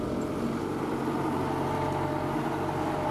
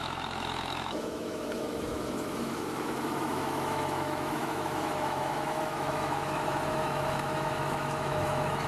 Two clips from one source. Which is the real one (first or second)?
first